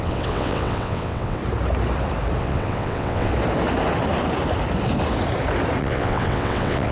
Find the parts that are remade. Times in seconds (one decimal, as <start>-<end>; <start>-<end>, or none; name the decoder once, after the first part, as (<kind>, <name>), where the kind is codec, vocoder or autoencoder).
0.0-1.4 (vocoder, WaveNeXt); 2.4-3.3; 5.8-6.9